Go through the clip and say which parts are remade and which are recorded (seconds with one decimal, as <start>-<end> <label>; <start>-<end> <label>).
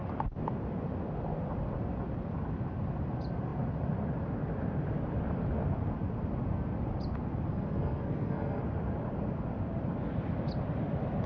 0.0-7.5 recorded; 7.5-8.6 remade; 8.6-11.3 recorded